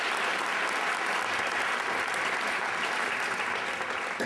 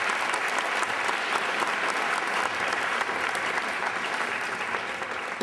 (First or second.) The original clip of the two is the first